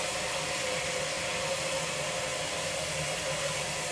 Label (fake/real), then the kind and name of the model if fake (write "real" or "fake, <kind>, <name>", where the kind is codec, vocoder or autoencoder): real